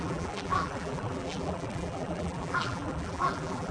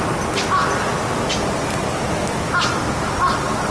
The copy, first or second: first